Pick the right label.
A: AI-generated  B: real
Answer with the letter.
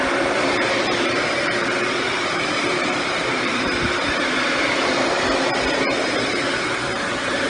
A